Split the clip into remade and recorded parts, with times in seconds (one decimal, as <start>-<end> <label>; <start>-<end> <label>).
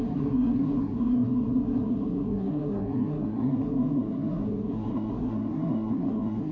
0.0-6.5 remade